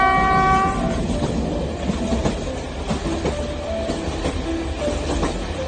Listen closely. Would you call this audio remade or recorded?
recorded